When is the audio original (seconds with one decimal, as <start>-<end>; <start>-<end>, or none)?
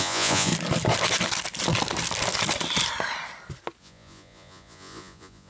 0.5-3.8